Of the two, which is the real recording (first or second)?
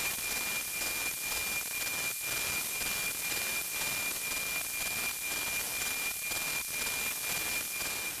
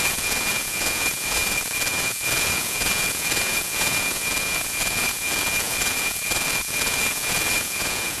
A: first